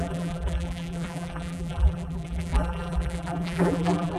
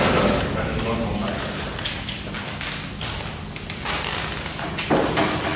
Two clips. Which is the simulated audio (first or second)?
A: first